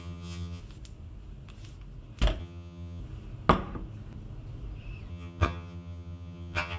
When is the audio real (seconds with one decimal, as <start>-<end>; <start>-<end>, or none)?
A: 0.6-2.4; 3.0-5.1